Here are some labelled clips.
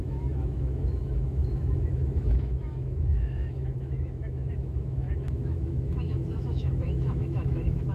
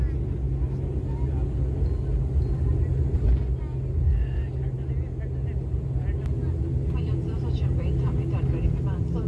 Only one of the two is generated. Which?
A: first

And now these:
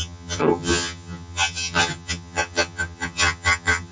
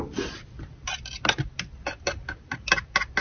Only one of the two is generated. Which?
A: first